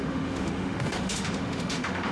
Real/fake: fake